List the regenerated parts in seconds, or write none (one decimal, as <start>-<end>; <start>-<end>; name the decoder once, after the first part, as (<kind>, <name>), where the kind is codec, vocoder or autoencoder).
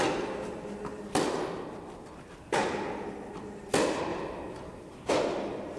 none